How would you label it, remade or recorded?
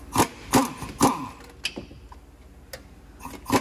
recorded